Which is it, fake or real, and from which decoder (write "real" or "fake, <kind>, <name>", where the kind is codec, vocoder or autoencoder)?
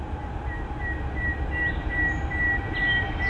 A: real